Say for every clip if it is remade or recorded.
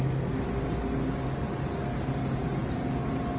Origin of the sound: recorded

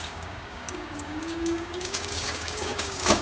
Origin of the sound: remade